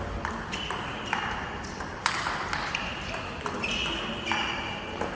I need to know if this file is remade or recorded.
recorded